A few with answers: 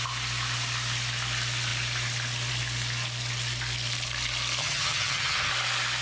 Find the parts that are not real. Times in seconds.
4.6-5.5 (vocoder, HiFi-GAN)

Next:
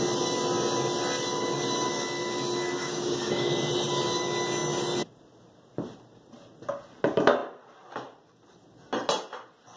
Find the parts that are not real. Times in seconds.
2.8-3.5 (codec, DAC)

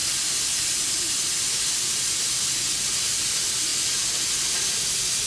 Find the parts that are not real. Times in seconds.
none

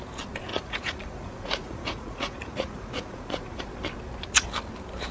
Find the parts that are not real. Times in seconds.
0.5-3.6 (vocoder, Vocos)